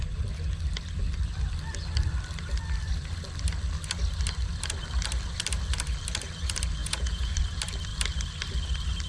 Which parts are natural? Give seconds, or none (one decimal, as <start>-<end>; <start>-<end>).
0.0-6.8; 7.3-9.1